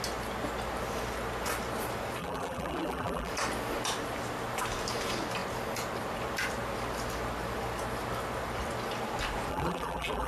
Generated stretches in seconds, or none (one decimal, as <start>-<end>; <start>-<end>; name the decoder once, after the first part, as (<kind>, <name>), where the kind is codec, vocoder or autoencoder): 2.2-3.3 (vocoder, BigVGAN v2); 9.5-10.3